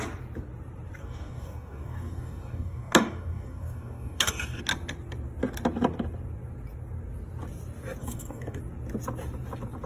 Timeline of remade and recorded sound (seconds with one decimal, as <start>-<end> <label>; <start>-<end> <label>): 0.0-1.0 recorded; 1.0-4.6 remade; 4.6-8.0 recorded; 8.0-8.6 remade; 8.6-9.9 recorded